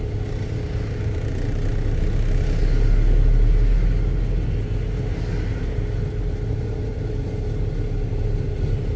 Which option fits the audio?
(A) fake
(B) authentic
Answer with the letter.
B